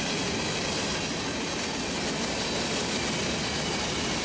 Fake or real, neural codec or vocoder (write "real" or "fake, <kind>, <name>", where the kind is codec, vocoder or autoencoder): real